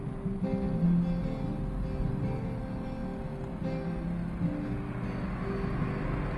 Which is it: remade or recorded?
recorded